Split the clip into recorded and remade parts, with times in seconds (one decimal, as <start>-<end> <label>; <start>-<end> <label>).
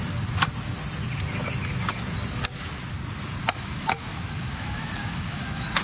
0.0-3.5 recorded; 3.5-5.8 remade